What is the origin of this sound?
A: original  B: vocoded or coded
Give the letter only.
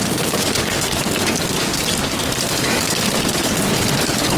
B